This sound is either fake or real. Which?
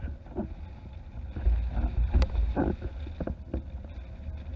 real